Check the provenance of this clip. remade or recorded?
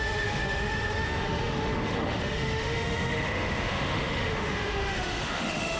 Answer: remade